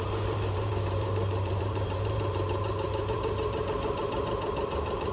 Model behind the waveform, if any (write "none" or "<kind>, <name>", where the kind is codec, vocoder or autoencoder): vocoder, BigVGAN v2